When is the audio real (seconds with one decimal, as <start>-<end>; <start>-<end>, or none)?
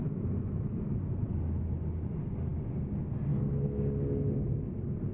0.0-5.1